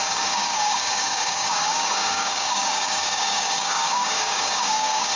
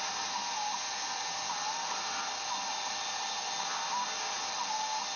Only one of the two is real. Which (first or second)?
second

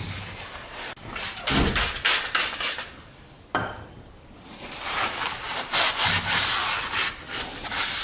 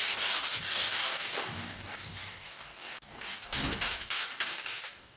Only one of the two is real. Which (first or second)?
first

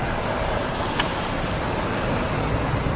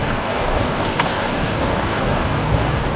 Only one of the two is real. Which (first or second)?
first